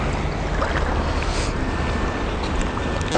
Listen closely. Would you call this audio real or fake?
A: real